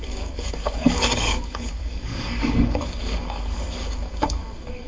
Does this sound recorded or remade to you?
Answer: remade